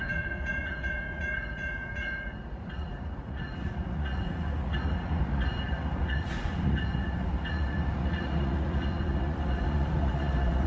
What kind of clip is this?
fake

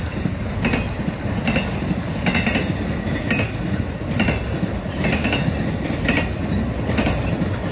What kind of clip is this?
real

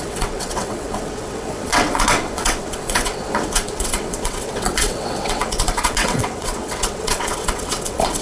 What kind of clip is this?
fake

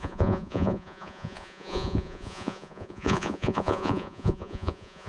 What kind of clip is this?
fake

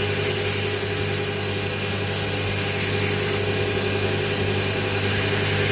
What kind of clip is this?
real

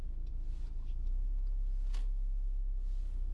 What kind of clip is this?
real